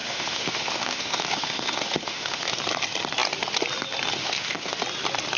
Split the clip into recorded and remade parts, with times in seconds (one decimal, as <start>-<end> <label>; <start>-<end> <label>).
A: 0.0-2.6 remade; 2.6-4.2 recorded; 4.2-4.8 remade; 4.8-5.4 recorded